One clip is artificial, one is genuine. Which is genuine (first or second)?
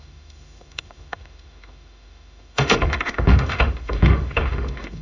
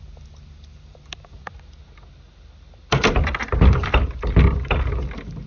second